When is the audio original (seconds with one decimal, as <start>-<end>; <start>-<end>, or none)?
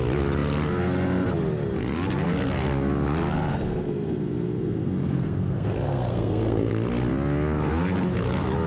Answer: 0.0-3.5; 6.7-8.7